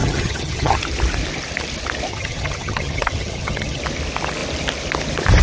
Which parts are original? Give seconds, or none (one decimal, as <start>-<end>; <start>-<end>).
0.8-2.1; 3.8-5.4